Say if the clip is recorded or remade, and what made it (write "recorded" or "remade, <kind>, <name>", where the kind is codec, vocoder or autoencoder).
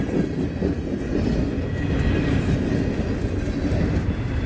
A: recorded